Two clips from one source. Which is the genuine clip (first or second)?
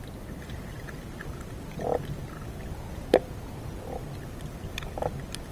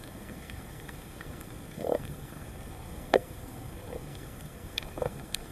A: first